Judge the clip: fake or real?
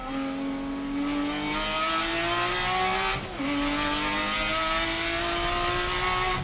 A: real